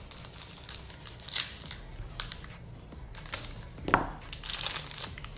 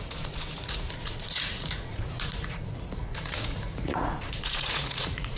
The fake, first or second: second